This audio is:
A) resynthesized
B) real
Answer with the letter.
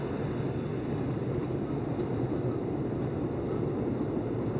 B